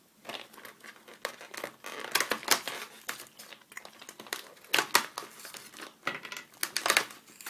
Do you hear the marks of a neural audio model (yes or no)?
no